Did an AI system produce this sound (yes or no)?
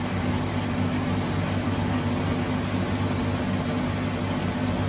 no